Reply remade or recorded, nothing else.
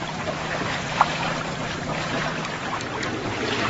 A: remade